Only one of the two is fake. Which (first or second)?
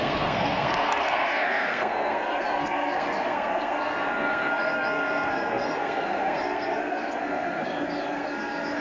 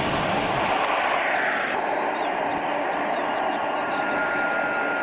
first